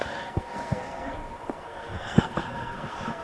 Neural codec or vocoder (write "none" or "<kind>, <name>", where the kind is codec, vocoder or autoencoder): codec, SNAC